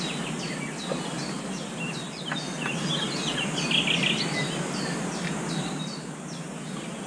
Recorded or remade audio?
recorded